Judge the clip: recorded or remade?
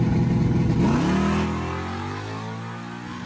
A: recorded